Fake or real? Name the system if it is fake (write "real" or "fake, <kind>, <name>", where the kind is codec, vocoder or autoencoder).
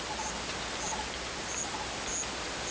real